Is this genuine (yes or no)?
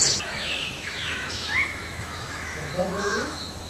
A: no